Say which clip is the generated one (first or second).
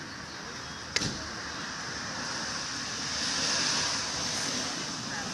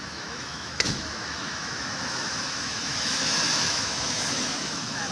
second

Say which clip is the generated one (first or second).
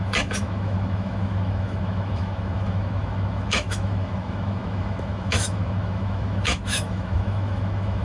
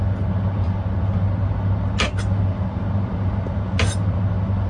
first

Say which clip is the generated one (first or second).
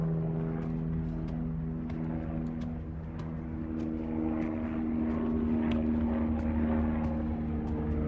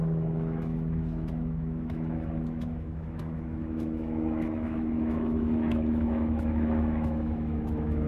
second